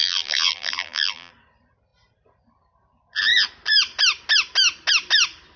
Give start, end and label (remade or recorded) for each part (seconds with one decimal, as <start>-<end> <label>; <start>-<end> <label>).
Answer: 0.0-1.3 remade; 1.3-5.6 recorded